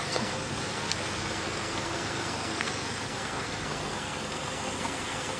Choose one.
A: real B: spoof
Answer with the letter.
B